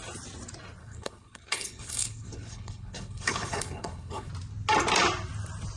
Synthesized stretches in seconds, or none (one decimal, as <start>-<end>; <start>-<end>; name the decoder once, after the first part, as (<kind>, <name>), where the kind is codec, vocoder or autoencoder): 0.8-4.3 (codec, HILCodec)